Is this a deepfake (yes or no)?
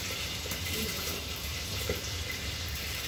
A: yes